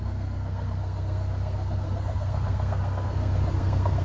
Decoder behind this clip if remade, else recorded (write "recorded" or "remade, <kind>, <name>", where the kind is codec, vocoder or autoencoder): remade, codec, SNAC